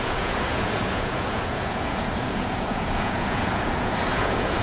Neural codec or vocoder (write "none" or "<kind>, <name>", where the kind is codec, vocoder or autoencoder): vocoder, Vocos